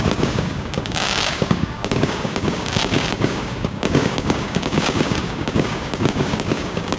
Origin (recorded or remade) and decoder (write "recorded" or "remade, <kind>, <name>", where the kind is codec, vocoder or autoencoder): remade, codec, DAC